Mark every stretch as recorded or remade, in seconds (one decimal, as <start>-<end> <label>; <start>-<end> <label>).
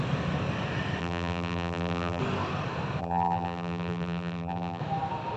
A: 0.0-1.0 recorded; 1.0-2.2 remade; 2.2-3.0 recorded; 3.0-4.8 remade; 4.8-5.4 recorded